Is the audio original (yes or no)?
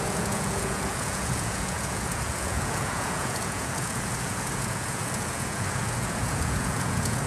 no